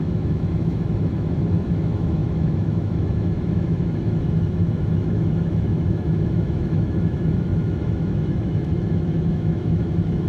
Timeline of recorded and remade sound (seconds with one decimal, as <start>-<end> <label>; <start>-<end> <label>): 0.0-10.3 remade